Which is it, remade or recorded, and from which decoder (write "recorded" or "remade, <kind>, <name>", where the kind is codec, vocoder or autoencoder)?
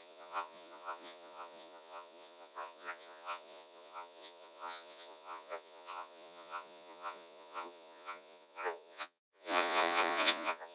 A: remade, vocoder, Vocos